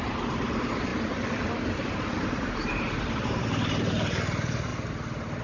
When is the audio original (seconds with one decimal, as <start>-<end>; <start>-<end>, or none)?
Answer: 0.9-1.6; 4.7-5.4